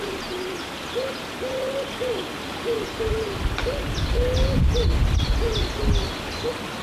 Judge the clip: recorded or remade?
recorded